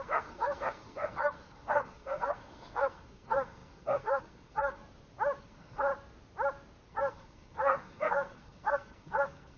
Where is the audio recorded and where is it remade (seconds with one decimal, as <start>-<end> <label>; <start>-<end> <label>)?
0.0-4.8 remade; 4.8-5.4 recorded; 5.4-5.9 remade; 5.9-6.9 recorded; 6.9-9.6 remade

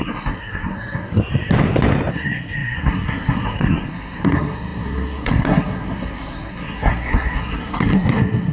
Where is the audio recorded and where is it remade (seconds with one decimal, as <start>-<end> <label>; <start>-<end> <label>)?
0.0-1.2 remade; 1.2-2.1 recorded; 2.1-8.5 remade